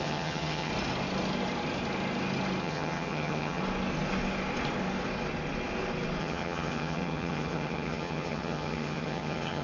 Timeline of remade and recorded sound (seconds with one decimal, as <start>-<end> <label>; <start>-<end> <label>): 0.0-0.7 remade; 0.7-2.6 recorded; 2.6-3.6 remade; 3.6-6.2 recorded; 6.2-9.6 remade